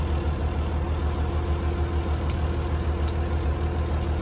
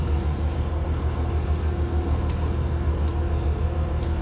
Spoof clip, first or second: second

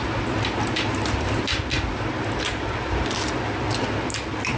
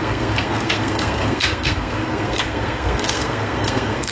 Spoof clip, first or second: second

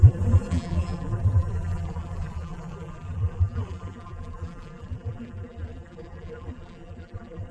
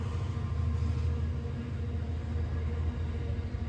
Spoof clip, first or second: first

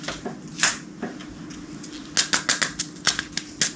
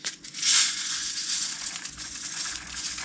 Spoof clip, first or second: second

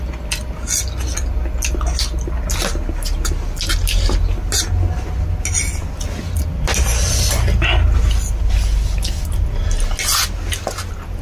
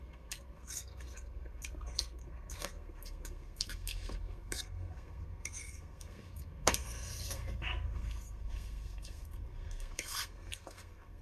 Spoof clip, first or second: second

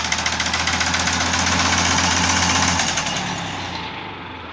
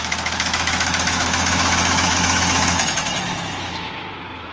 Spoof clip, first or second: second